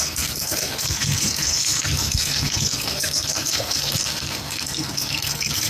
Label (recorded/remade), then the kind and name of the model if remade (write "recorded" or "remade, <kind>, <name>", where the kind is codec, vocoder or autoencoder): remade, codec, SNAC